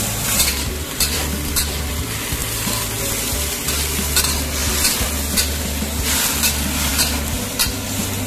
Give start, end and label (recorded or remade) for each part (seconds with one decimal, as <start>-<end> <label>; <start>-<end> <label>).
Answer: 0.0-0.5 recorded; 0.5-1.9 remade; 1.9-8.3 recorded